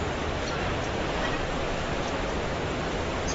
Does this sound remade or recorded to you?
recorded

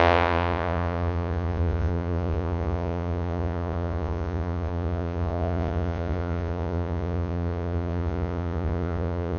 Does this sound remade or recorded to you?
remade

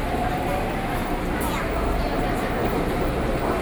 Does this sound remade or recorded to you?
recorded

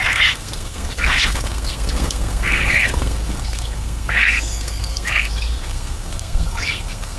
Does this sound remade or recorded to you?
remade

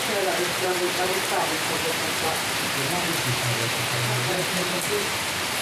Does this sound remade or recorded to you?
remade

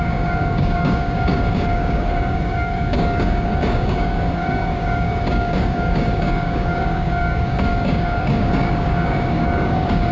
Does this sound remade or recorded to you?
remade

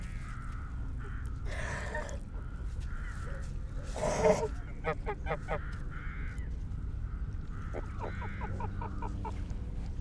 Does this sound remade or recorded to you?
recorded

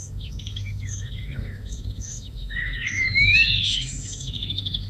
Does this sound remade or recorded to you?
remade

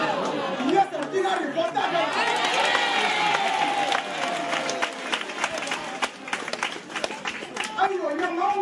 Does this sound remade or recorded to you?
recorded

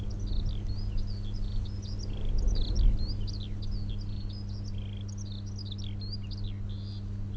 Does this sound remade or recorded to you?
recorded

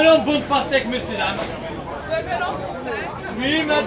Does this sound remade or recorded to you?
recorded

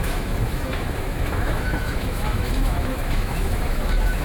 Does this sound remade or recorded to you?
remade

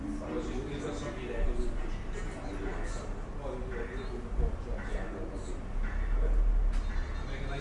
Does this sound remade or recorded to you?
recorded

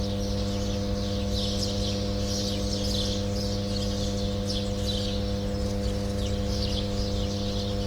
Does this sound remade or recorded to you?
recorded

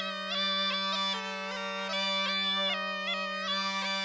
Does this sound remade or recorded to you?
recorded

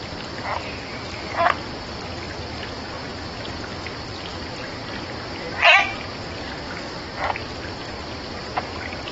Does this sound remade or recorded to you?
recorded